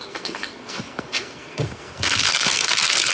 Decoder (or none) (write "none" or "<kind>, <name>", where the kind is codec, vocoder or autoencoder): codec, SNAC